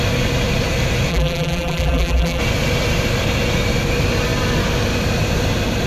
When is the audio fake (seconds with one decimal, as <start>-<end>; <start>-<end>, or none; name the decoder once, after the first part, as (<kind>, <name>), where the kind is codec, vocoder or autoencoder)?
1.1-2.4 (vocoder, BigVGAN v2)